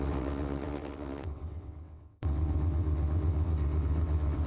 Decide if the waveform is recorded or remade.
remade